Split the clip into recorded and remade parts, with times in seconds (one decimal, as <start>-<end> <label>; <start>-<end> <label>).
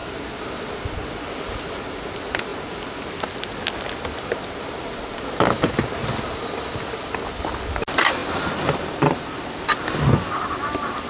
0.0-11.1 recorded